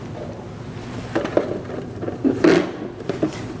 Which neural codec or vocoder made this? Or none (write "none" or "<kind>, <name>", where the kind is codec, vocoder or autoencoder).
none